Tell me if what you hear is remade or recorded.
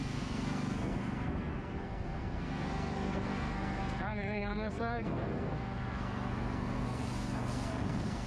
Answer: remade